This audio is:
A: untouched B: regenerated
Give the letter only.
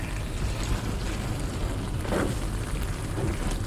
A